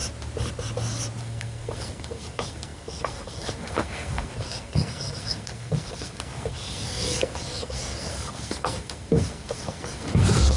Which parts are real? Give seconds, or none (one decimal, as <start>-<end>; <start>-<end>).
0.0-1.2